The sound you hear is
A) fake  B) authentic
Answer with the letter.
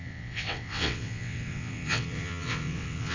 A